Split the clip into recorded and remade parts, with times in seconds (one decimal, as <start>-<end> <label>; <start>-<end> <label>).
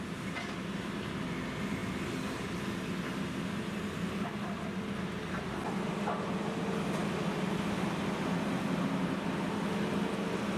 0.0-10.6 recorded